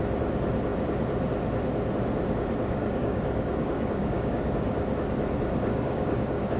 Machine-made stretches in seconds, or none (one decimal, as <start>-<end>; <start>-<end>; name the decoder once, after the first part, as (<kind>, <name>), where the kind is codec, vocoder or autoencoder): 2.6-4.7 (codec, DAC); 5.7-6.6